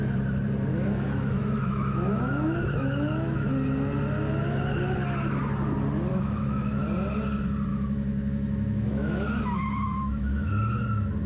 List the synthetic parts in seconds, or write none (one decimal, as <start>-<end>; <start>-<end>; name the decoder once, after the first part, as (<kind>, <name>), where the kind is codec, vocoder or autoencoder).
0.7-3.5 (autoencoder, DAC-VAE); 6.1-6.8; 7.7-10.5